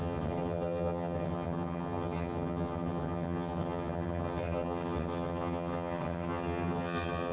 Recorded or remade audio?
remade